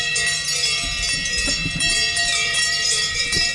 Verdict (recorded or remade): remade